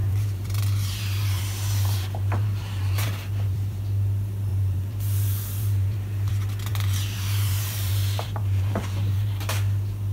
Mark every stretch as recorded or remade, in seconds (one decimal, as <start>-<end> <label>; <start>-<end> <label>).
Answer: 0.0-3.8 remade; 3.8-4.5 recorded; 4.5-6.3 remade; 6.3-6.7 recorded; 6.7-9.4 remade; 9.4-10.1 recorded